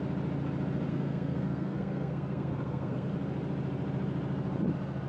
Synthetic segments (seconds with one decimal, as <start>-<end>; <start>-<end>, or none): 0.9-3.1